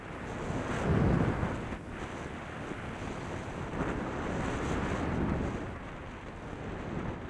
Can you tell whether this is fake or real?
real